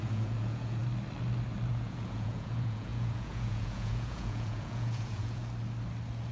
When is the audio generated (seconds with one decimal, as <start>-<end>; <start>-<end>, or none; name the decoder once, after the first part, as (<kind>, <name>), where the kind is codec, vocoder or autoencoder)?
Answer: 0.0-0.8 (vocoder, Vocos); 1.7-5.4